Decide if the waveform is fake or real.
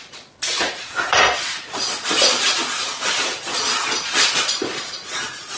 fake